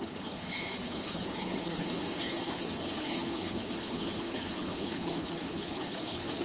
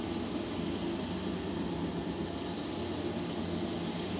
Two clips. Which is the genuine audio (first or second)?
second